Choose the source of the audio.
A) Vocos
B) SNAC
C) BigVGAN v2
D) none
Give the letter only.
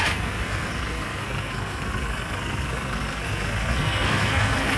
B